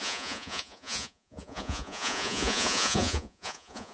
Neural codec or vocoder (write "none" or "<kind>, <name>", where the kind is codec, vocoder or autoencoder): vocoder, Vocos